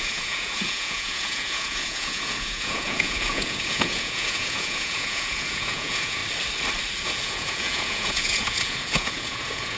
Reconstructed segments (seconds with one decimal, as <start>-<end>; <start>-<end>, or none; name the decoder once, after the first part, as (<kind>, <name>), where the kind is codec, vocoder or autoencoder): 0.0-6.2 (vocoder, Vocos); 7.0-9.8